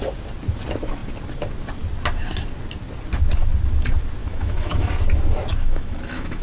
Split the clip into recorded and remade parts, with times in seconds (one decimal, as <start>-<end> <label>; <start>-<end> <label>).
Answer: 0.0-4.2 recorded; 4.2-4.9 remade; 4.9-5.5 recorded; 5.5-6.4 remade